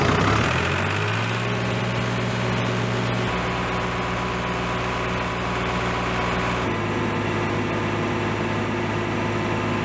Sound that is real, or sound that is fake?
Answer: real